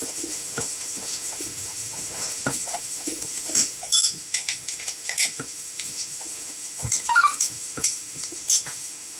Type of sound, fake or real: fake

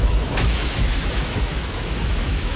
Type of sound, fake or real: fake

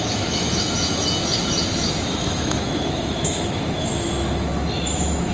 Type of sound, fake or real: fake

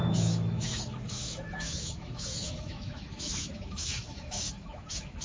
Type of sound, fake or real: fake